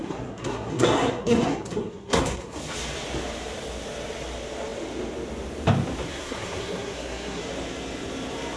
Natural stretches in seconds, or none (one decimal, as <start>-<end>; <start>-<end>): 2.6-6.1; 7.4-8.6